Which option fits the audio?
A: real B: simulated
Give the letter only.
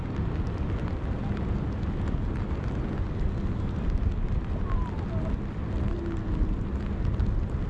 A